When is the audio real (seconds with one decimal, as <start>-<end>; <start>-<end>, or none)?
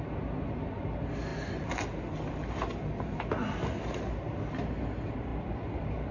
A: 0.0-6.1